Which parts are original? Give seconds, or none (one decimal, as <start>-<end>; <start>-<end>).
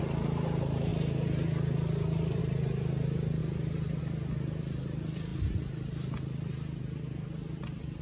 0.0-8.0